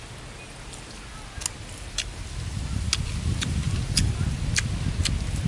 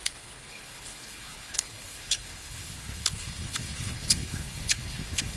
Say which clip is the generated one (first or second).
second